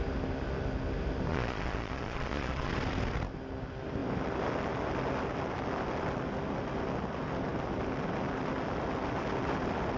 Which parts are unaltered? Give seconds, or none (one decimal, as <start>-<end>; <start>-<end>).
0.0-1.3; 2.7-10.0